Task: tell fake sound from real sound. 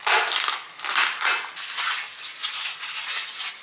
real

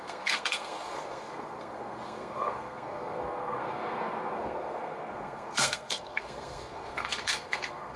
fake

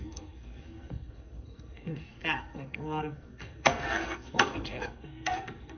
fake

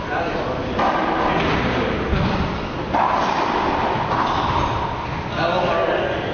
real